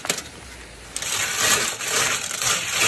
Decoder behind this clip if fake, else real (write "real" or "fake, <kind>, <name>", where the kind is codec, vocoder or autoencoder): real